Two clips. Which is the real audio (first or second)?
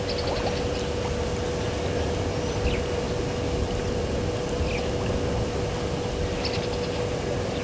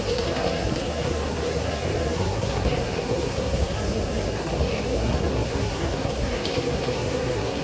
first